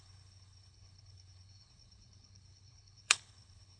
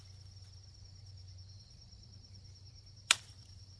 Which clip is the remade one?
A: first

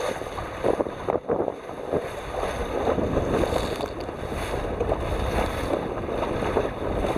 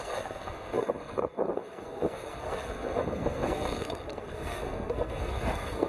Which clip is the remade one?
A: second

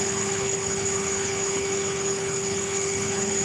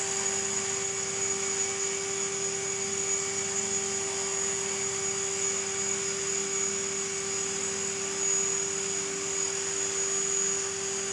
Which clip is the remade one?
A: first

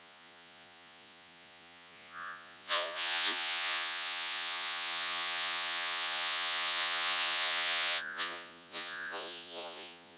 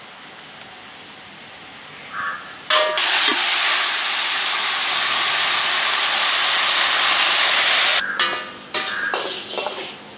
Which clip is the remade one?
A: first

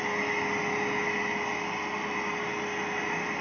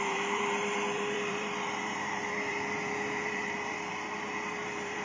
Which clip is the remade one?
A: second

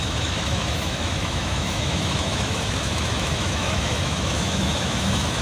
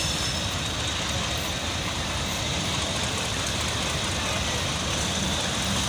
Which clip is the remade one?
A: first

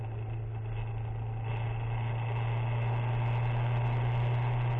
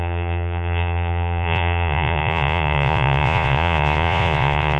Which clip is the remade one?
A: second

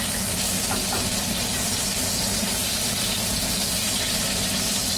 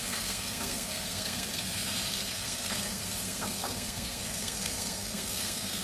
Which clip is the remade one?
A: second